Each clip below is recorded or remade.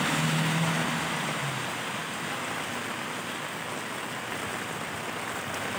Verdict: recorded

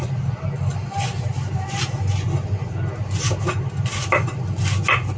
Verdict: recorded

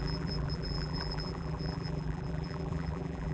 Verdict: remade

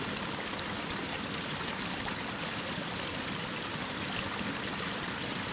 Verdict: recorded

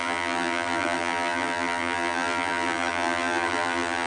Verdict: remade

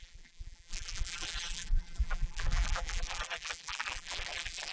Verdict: remade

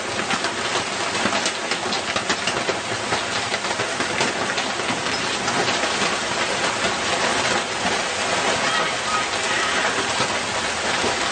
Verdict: recorded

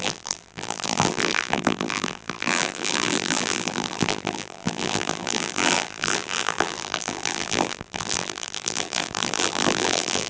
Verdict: remade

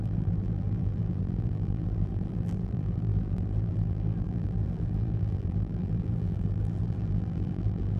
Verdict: remade